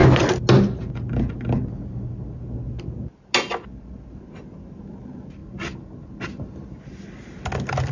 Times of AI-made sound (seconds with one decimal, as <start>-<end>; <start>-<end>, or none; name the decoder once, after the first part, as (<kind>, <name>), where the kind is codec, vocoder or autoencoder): none